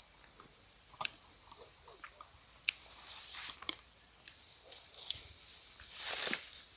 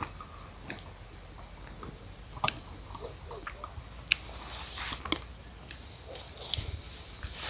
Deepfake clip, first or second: first